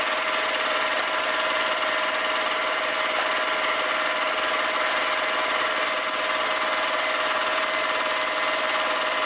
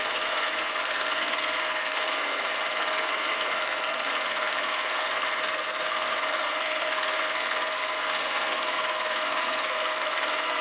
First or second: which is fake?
second